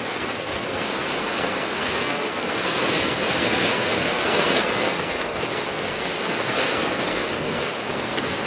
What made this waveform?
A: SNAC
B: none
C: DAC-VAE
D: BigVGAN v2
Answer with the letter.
A